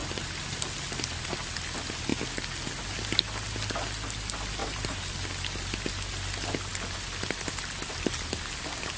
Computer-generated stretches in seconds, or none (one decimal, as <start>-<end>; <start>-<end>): 0.0-0.6; 4.6-5.1